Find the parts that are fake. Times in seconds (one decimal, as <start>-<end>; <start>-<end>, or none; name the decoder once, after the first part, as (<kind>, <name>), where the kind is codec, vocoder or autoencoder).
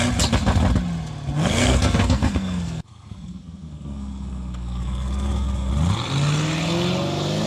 1.4-5.7 (codec, SNAC)